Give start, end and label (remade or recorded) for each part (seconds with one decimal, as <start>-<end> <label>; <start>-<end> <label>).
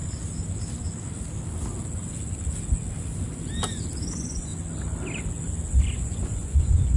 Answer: 0.0-4.1 recorded; 4.1-4.5 remade; 4.5-5.9 recorded; 5.9-7.0 remade